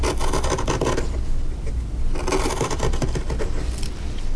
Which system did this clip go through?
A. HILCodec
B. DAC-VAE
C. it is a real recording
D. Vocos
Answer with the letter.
C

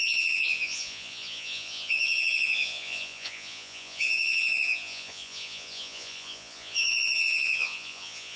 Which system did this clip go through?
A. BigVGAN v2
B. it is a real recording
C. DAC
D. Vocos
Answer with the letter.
D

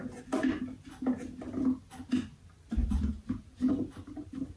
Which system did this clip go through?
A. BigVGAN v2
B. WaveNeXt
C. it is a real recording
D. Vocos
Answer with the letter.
C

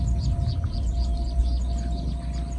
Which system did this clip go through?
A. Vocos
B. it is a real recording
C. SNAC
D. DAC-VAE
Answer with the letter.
B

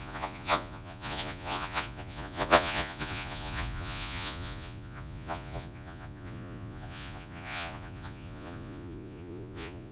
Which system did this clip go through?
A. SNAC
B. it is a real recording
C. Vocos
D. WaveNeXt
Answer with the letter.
C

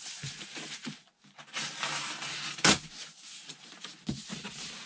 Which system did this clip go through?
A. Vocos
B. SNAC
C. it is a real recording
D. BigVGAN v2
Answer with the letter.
C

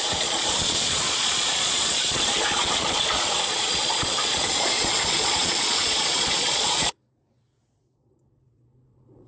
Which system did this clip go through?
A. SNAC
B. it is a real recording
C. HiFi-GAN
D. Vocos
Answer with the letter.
D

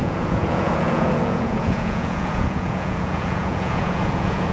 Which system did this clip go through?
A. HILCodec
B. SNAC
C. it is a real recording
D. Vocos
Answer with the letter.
D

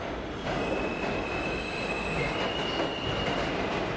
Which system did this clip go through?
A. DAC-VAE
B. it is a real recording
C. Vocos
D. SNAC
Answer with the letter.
B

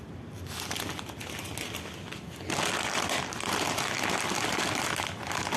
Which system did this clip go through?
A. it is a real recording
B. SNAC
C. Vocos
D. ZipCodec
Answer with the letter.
A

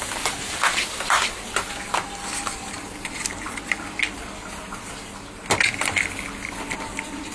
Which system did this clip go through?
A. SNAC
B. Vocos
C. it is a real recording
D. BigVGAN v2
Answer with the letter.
C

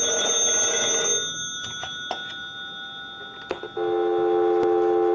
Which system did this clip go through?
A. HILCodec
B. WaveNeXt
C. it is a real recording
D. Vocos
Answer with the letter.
C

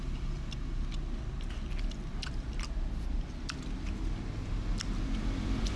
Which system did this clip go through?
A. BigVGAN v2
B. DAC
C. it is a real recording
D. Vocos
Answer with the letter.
C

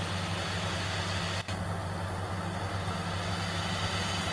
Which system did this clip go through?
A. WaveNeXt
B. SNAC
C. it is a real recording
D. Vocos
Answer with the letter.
C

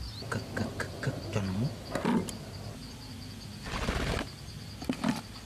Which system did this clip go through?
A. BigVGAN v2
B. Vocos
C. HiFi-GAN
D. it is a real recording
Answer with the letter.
D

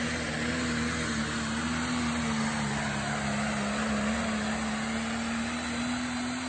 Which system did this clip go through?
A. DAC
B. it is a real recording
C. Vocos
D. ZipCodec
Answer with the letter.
B